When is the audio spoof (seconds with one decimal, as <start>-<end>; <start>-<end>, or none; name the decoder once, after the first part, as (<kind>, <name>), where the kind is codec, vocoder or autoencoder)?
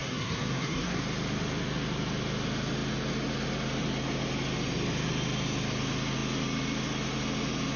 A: 0.0-1.0 (codec, SNAC)